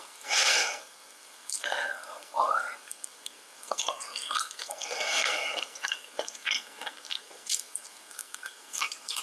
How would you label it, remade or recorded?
remade